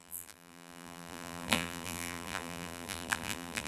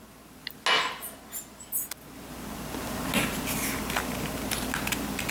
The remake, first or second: first